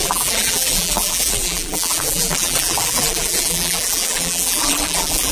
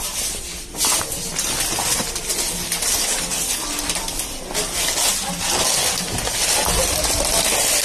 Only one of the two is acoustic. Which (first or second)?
second